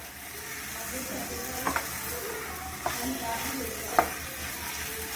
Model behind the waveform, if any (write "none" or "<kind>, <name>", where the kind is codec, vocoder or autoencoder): none